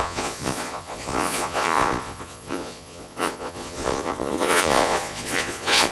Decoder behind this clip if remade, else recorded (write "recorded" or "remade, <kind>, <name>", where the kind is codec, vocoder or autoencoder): remade, vocoder, Vocos